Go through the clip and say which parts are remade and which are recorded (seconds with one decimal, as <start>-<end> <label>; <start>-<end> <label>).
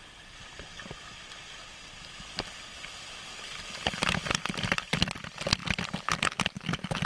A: 0.0-7.1 recorded